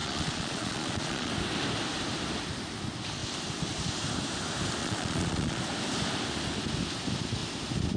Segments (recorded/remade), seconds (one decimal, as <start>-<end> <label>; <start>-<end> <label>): 0.0-1.3 remade; 1.3-4.8 recorded; 4.8-5.6 remade; 5.6-8.0 recorded